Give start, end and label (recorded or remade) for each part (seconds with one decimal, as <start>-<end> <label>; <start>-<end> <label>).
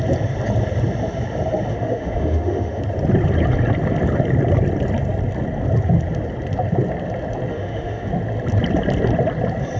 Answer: 0.0-1.7 recorded; 1.7-2.8 remade; 2.8-7.5 recorded; 7.5-8.1 remade; 8.1-9.8 recorded